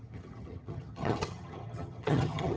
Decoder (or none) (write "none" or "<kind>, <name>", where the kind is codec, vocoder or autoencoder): vocoder, HiFi-GAN